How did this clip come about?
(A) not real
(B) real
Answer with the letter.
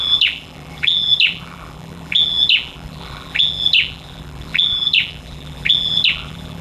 A